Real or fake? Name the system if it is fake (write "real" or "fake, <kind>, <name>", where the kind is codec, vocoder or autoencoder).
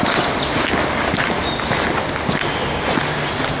real